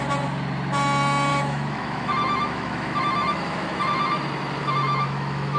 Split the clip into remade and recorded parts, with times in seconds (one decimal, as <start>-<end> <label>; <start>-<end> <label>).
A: 0.0-1.3 recorded; 1.3-3.8 remade; 3.8-4.6 recorded; 4.6-5.6 remade